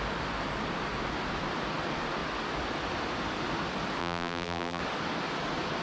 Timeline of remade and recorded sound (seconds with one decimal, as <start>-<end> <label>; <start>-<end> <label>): 0.0-4.0 recorded; 4.0-4.8 remade; 4.8-5.8 recorded